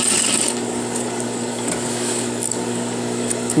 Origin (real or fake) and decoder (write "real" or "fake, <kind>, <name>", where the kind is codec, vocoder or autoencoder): fake, codec, DAC